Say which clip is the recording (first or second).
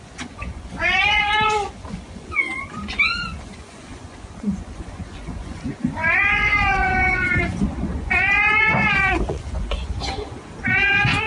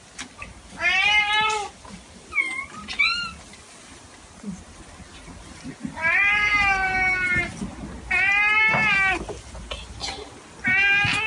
second